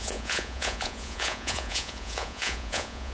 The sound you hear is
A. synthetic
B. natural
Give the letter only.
A